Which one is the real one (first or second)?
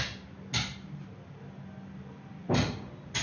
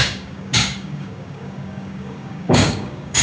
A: first